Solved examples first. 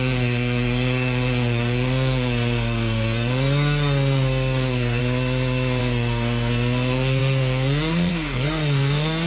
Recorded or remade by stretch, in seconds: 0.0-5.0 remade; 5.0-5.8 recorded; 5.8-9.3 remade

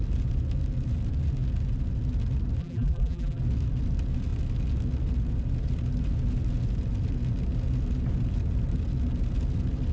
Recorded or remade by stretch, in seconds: 0.0-2.6 recorded; 2.6-3.4 remade; 3.4-9.9 recorded

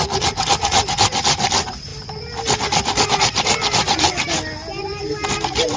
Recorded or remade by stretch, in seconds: 0.0-5.8 recorded

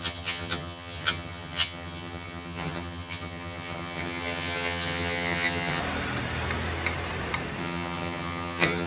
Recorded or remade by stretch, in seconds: 0.0-5.8 remade; 5.8-7.6 recorded; 7.6-8.9 remade

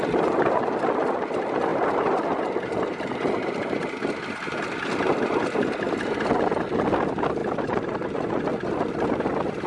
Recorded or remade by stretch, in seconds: 0.0-7.4 recorded; 7.4-8.3 remade; 8.3-9.7 recorded

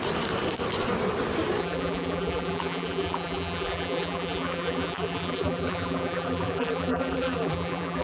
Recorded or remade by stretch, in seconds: 0.0-1.6 recorded; 1.6-8.0 remade